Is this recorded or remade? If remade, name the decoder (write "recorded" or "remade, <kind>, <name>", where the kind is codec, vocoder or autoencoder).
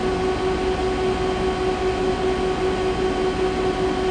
recorded